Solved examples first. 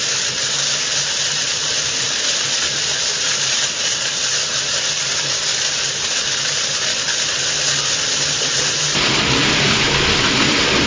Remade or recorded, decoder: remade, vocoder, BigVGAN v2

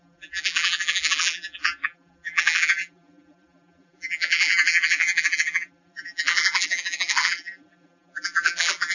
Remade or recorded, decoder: remade, vocoder, BigVGAN v2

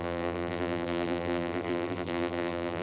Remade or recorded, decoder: remade, vocoder, BigVGAN v2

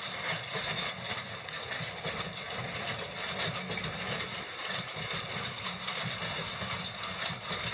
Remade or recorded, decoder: recorded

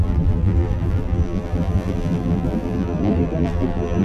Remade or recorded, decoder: remade, vocoder, BigVGAN v2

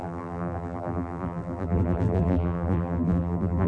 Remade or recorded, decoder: remade, vocoder, BigVGAN v2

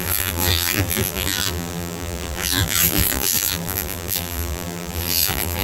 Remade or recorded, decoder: remade, vocoder, BigVGAN v2